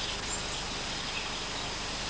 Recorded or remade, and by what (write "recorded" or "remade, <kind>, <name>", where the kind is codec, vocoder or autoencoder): recorded